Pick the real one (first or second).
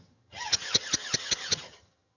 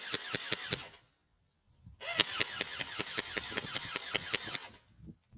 second